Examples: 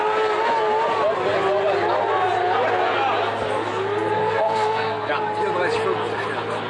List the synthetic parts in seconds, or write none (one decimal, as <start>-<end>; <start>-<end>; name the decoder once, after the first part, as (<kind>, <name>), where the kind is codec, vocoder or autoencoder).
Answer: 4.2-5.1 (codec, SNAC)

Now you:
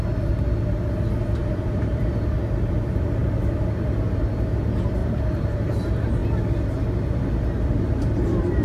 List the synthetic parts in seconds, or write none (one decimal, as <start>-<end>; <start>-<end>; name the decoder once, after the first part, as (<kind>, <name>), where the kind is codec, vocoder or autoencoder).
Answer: 1.4-2.2 (vocoder, BigVGAN v2); 5.0-5.6

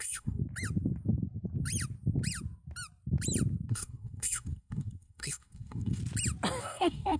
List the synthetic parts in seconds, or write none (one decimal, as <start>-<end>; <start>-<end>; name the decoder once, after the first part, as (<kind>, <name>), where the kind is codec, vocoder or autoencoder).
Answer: 0.0-0.4 (codec, SNAC); 3.7-6.0; 6.6-7.2

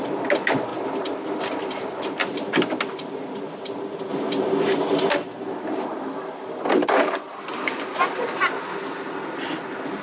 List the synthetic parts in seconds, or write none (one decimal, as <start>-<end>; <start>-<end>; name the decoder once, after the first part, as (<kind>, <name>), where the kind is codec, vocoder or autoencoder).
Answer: none

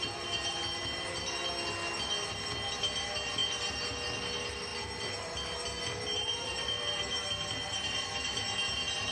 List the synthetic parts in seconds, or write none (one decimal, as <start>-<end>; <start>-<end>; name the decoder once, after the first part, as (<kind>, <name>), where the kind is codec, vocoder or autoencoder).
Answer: none